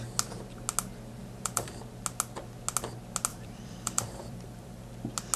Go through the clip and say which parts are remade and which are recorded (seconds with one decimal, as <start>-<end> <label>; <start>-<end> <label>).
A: 0.0-1.2 recorded; 1.2-1.7 remade; 1.7-3.3 recorded; 3.3-4.8 remade; 4.8-5.4 recorded